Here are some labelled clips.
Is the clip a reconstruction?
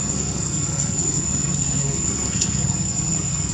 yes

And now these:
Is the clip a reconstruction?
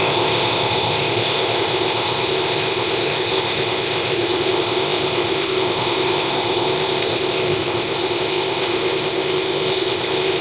yes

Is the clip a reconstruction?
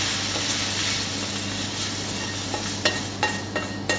no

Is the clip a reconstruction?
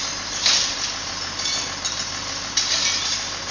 no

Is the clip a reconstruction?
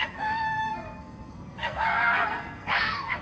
yes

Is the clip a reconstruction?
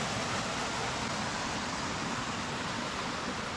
no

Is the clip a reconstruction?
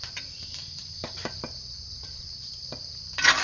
no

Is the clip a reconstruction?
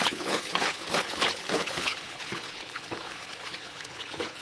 yes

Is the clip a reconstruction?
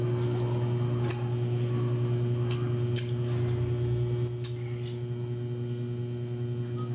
no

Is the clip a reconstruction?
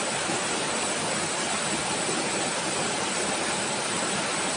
no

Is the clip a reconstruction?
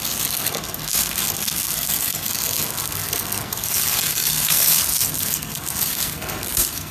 yes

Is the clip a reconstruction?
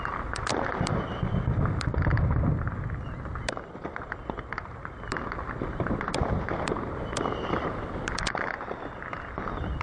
no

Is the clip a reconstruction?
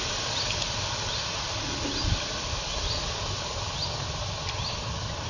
no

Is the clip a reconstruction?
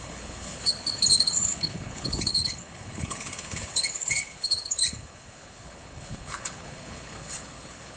yes